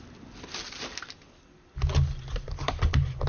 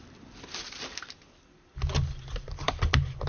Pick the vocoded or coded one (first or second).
second